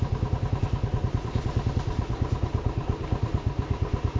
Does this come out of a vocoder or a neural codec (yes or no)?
no